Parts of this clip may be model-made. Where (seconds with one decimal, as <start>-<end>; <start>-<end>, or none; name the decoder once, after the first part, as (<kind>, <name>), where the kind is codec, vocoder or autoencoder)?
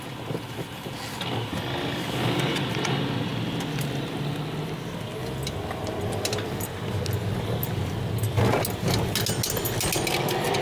none